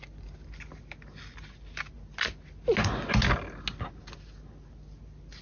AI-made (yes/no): no